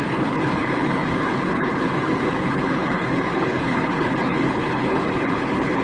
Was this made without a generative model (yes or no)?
no